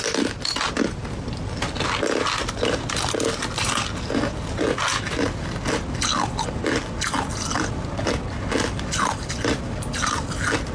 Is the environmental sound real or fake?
real